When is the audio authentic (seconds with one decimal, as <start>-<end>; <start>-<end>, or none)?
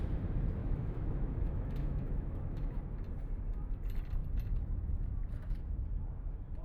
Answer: 0.0-0.6; 2.8-6.6